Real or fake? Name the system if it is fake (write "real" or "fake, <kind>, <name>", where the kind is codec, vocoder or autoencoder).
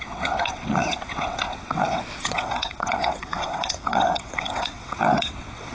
fake, vocoder, WaveNeXt